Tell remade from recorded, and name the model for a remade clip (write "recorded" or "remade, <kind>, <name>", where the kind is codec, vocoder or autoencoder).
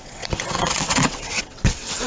remade, vocoder, WaveNeXt